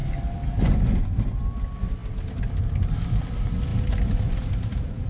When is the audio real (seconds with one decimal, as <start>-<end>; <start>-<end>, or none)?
0.0-3.7